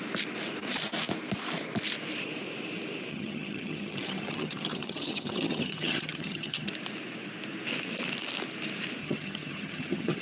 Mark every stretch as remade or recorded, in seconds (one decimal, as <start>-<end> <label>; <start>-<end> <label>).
0.0-3.1 recorded; 3.1-6.7 remade; 6.7-9.0 recorded; 9.0-10.2 remade